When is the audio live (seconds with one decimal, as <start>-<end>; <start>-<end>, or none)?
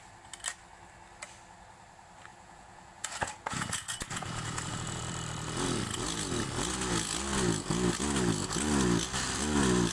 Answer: 0.0-2.3; 5.0-9.9